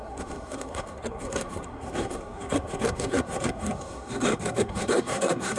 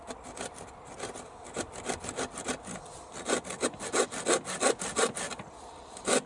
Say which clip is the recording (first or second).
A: second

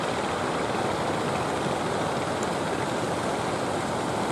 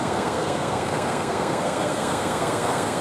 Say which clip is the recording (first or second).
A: first